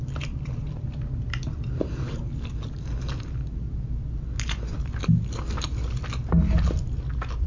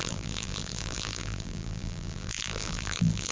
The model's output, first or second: second